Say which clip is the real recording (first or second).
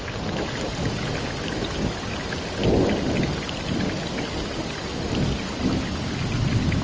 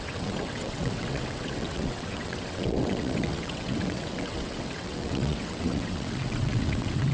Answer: first